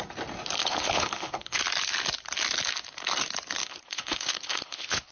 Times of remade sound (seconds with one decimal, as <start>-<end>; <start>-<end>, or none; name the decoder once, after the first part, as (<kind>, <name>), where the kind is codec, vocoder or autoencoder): 0.6-1.6 (codec, HILCodec); 3.6-5.1